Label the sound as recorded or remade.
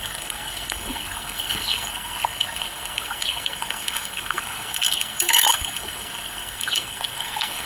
remade